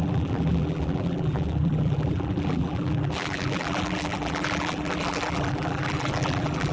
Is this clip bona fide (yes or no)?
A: no